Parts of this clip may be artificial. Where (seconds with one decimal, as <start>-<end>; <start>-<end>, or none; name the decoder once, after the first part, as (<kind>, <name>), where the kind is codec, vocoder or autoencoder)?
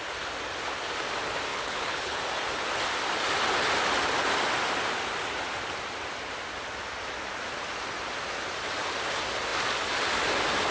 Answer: 1.5-2.2 (codec, HILCodec)